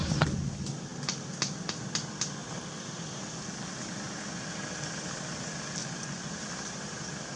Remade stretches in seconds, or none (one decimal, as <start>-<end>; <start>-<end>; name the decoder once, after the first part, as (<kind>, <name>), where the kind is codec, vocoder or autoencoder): 5.8-6.3 (vocoder, Vocos)